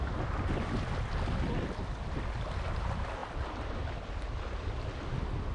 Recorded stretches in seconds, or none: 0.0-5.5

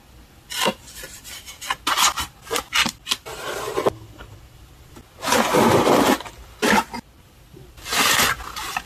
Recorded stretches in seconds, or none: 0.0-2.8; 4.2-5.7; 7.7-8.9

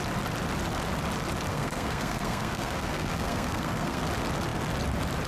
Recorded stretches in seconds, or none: 0.0-1.5; 4.0-5.3